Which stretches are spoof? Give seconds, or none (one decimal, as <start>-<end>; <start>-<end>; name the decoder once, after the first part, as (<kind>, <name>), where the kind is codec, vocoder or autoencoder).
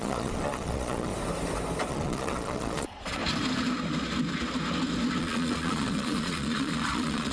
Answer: 0.0-1.1 (vocoder, Vocos); 1.9-3.2; 5.2-7.3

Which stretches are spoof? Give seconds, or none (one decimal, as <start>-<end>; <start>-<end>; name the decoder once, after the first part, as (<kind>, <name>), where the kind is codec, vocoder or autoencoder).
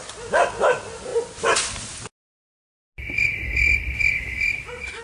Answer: none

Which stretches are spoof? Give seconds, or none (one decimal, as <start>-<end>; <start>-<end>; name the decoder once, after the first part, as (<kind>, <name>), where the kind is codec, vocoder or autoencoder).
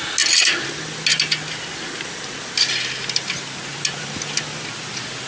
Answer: none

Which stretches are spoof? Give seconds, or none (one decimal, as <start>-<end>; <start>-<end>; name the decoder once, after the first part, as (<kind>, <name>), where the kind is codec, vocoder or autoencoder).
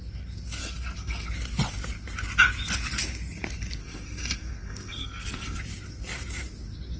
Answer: 0.6-1.3 (codec, SNAC); 3.8-5.6